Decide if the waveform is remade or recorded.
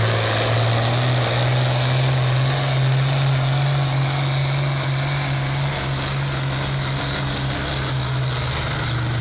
recorded